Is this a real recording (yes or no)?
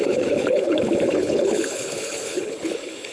no